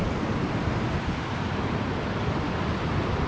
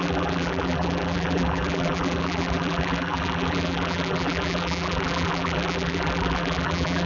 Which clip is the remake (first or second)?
second